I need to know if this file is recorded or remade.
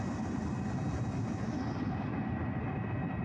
recorded